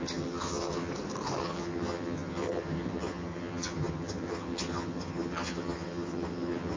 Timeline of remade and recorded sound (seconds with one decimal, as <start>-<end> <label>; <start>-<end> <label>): 0.0-0.9 remade; 0.9-1.4 recorded; 1.4-6.8 remade